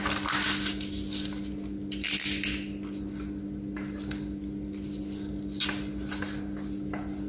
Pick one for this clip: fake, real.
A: real